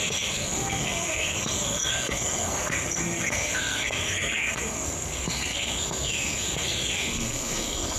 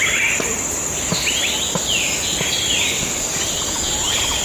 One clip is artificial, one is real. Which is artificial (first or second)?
first